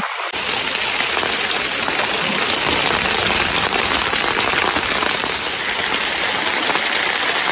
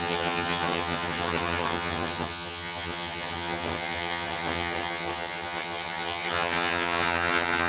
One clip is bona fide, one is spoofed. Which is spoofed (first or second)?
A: second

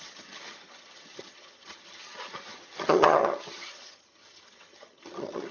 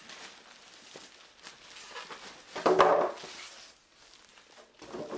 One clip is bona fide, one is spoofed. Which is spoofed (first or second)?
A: first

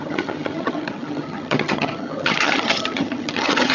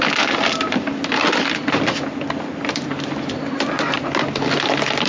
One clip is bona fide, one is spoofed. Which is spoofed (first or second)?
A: first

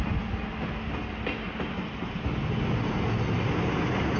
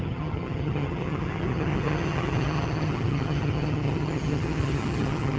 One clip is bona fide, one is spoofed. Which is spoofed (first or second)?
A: second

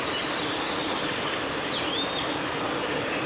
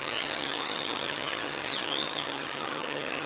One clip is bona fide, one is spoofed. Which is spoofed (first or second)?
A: second